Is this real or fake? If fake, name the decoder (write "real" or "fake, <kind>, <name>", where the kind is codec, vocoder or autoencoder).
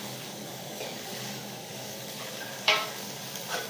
fake, codec, DAC